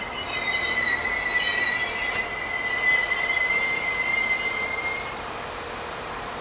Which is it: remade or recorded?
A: recorded